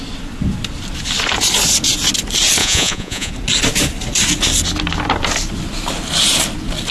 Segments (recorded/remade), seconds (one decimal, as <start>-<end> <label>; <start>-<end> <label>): 0.0-2.6 recorded; 2.6-3.3 remade; 3.3-6.9 recorded